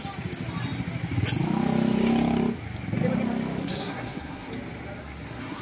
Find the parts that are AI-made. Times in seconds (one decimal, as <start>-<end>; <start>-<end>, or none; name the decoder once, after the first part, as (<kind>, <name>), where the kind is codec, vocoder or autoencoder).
3.6-4.5 (codec, SNAC); 5.0-5.6